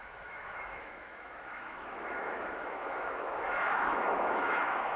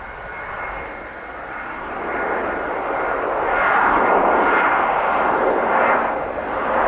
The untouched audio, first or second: second